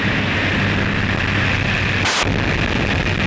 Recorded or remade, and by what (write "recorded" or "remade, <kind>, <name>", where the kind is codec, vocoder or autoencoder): recorded